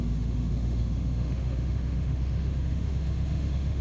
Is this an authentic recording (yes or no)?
no